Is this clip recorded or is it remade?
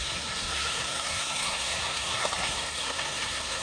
remade